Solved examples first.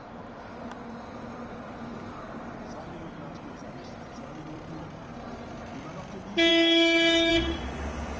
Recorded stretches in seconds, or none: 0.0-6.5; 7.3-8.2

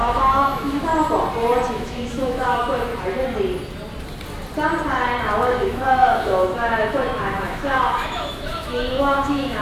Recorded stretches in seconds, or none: 0.9-1.7; 2.9-5.2

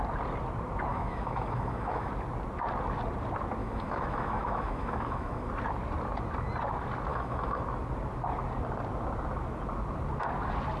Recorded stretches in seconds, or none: 0.0-0.9; 2.1-3.6; 5.5-7.1; 7.6-10.8

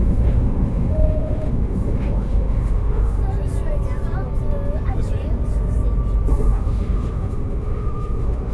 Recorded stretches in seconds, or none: 3.2-6.3

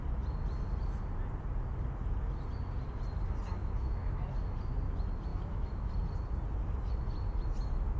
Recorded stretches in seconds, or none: 0.0-3.6; 4.2-5.3; 5.9-8.0

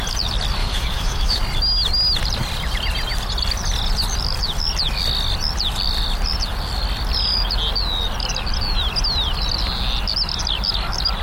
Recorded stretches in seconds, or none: 0.0-0.6; 1.4-11.2

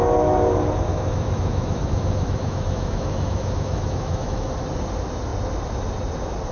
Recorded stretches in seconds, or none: 0.0-0.9; 4.5-6.5